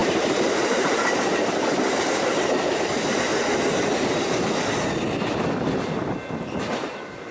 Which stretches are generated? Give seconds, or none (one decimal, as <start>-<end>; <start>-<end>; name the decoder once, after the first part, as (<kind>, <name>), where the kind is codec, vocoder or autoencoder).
0.0-3.3 (vocoder, BigVGAN v2); 6.6-7.3